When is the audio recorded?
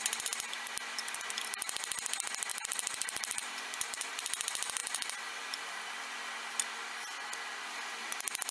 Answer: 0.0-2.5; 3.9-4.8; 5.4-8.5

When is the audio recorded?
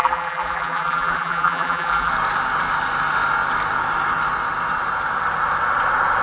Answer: 2.1-6.2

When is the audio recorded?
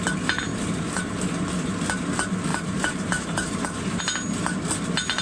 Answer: 0.0-0.5; 1.1-2.5; 4.0-5.2